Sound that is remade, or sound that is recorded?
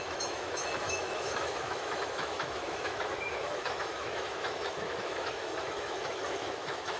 remade